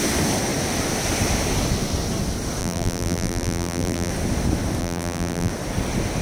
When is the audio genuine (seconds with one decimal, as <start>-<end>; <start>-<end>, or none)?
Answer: 0.0-2.6; 4.1-4.8; 5.5-6.2